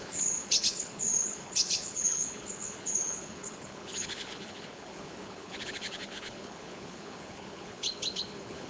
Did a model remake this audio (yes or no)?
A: yes